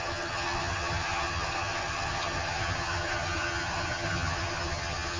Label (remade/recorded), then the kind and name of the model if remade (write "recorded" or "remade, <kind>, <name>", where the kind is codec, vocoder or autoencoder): remade, vocoder, HiFi-GAN